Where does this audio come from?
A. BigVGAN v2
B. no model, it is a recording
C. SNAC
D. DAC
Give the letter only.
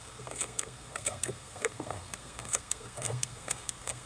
C